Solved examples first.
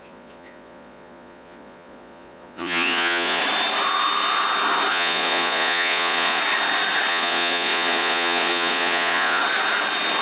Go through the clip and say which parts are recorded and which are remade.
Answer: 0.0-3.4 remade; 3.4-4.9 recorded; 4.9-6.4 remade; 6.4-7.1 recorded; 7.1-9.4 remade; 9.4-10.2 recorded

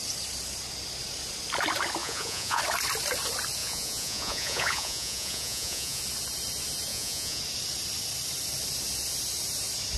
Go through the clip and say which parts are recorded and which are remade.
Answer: 0.0-2.0 recorded; 2.0-2.6 remade; 2.6-3.6 recorded; 3.6-6.0 remade; 6.0-6.9 recorded; 6.9-7.4 remade; 7.4-10.0 recorded

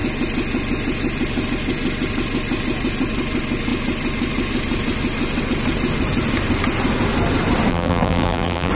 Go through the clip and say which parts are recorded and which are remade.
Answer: 0.0-7.7 recorded; 7.7-8.7 remade

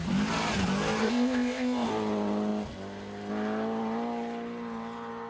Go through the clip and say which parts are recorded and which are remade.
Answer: 0.0-1.0 recorded; 1.0-1.9 remade; 1.9-5.3 recorded

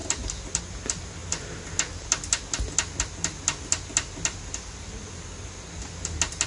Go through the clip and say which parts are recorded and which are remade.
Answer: 0.0-6.5 recorded